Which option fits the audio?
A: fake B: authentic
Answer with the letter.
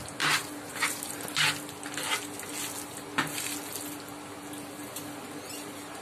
B